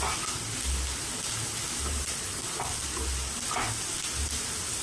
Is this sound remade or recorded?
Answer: recorded